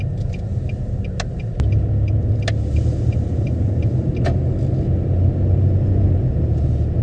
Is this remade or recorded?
recorded